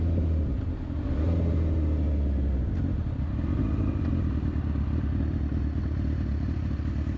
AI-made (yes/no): no